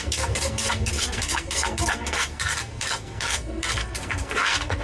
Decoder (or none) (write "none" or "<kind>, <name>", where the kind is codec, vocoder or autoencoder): codec, SNAC